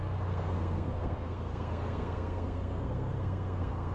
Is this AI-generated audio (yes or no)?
yes